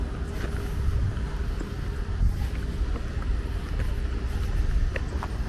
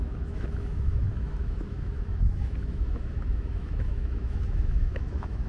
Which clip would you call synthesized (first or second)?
second